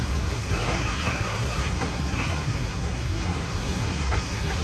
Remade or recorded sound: remade